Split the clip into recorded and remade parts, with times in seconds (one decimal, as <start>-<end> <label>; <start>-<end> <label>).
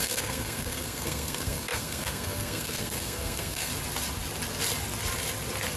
0.0-3.7 remade; 3.7-5.8 recorded